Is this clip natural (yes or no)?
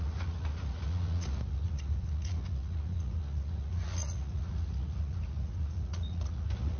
no